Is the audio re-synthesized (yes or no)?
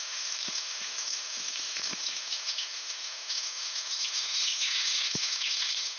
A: yes